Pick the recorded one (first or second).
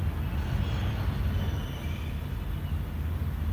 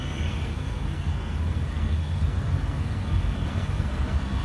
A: first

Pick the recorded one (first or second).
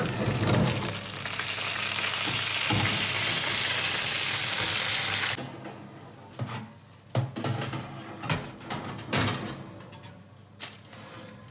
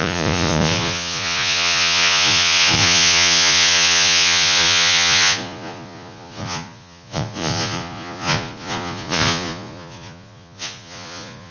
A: first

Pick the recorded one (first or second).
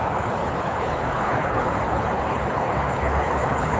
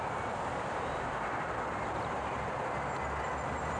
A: second